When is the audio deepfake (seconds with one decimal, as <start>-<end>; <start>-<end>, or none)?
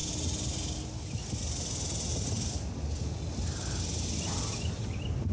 none